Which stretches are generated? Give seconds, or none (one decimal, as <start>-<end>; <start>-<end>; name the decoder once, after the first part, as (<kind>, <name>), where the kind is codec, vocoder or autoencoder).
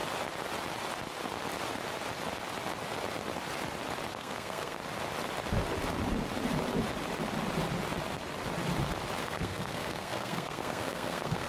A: 4.1-4.8 (codec, SNAC); 9.2-11.5